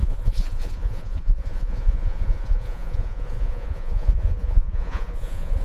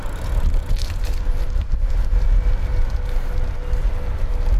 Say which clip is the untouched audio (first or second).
second